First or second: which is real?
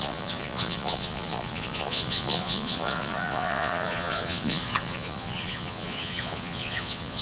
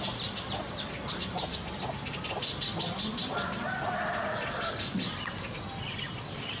second